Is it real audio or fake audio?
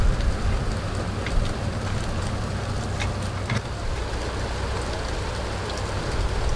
real